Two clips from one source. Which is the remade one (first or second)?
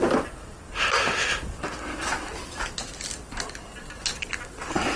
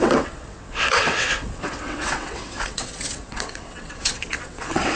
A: second